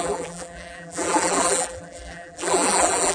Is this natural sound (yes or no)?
no